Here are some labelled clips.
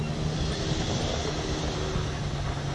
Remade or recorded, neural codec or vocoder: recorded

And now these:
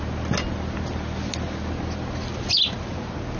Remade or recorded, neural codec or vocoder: recorded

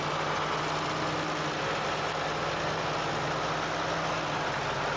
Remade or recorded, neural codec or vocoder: recorded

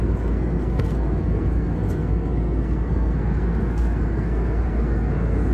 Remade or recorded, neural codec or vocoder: remade, codec, SNAC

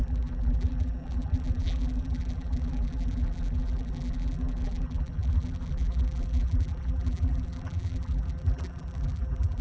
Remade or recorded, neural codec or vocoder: remade, vocoder, BigVGAN v2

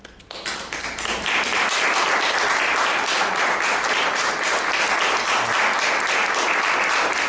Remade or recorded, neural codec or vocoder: remade, vocoder, BigVGAN v2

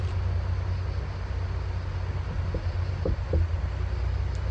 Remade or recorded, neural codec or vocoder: recorded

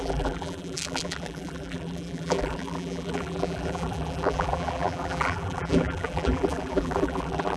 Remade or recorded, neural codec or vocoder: remade, vocoder, BigVGAN v2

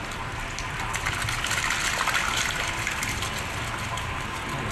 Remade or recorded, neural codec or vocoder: recorded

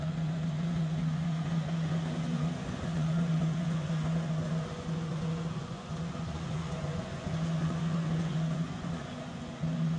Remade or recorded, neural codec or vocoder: remade, vocoder, Vocos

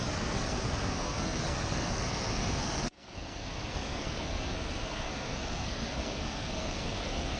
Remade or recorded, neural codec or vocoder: remade, codec, SNAC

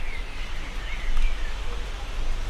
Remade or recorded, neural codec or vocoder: recorded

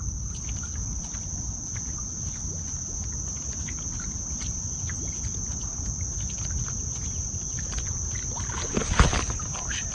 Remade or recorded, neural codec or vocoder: recorded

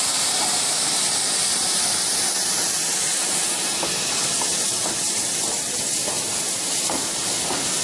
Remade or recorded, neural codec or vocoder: recorded